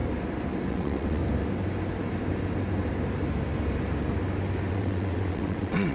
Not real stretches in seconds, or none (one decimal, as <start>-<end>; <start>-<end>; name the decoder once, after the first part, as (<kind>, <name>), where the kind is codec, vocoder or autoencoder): 0.7-1.2 (vocoder, WaveNeXt); 4.7-5.9